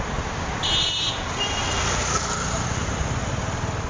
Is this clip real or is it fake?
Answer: real